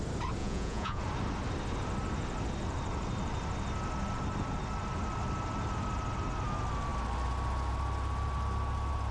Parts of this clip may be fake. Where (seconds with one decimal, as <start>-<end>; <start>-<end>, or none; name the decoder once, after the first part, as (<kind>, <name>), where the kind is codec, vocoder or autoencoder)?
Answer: 0.4-1.0 (vocoder, Vocos)